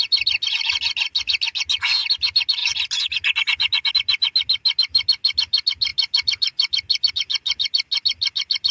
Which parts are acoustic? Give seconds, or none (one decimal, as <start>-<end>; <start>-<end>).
0.0-8.7